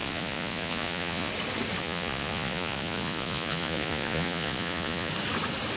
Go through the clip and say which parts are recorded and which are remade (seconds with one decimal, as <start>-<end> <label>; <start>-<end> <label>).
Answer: 0.0-1.3 remade; 1.3-1.8 recorded; 1.8-5.1 remade; 5.1-5.8 recorded